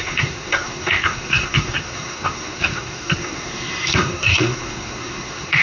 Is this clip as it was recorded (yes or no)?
no